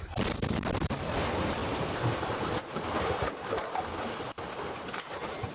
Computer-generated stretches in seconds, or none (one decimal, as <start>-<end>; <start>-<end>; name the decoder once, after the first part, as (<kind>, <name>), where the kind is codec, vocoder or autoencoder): 0.0-5.5 (vocoder, BigVGAN v2)